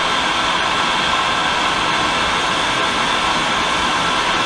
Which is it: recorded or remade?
recorded